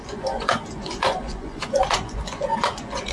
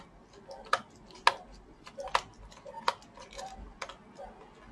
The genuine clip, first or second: second